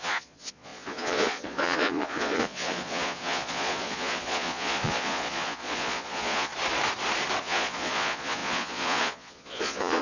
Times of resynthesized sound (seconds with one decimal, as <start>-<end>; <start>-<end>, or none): 0.0-6.5; 7.4-10.0